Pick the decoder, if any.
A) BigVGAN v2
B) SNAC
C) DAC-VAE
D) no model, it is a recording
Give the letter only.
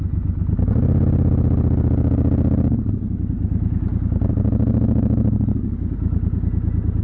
D